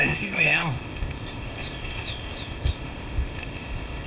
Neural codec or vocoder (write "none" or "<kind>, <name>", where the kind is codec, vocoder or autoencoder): codec, ZipCodec